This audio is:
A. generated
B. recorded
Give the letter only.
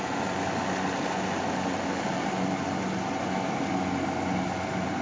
B